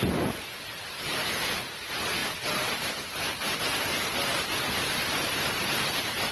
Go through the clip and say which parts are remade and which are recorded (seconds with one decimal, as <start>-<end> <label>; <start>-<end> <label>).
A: 0.0-6.3 recorded

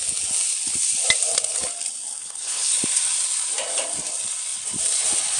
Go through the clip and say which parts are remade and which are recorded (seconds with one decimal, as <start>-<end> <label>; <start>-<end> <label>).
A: 0.0-2.2 recorded; 2.2-2.7 remade; 2.7-5.4 recorded